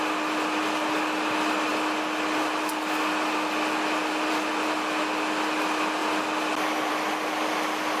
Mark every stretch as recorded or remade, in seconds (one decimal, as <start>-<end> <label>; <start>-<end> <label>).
0.0-8.0 recorded